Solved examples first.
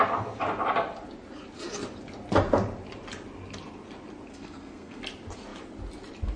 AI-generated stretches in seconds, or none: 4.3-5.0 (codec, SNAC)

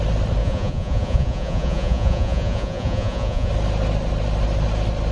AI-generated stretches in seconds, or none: 0.4-3.5 (vocoder, Vocos)

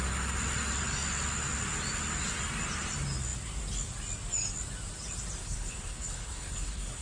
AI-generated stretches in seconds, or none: 5.4-7.0 (codec, HILCodec)